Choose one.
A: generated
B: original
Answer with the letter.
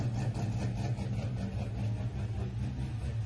B